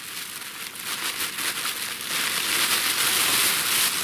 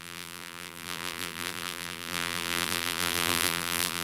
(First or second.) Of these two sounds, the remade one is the second